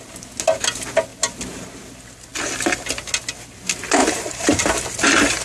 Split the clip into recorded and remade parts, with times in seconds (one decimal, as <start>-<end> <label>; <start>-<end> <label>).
0.0-4.0 recorded; 4.0-4.7 remade; 4.7-5.4 recorded